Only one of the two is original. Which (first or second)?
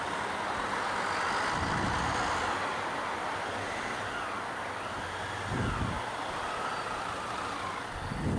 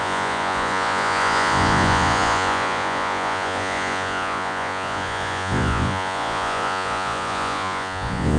first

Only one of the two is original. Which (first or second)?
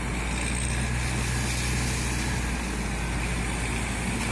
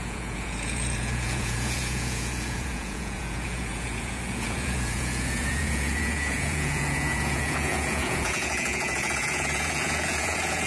first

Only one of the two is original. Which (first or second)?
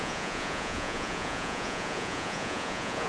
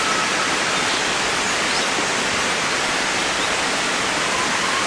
second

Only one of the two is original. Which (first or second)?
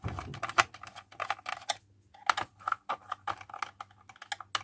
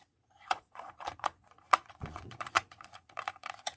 first